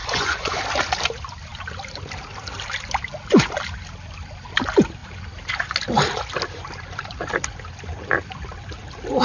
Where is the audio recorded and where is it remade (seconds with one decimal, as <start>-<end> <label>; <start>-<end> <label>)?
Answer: 0.0-0.6 remade; 0.6-9.2 recorded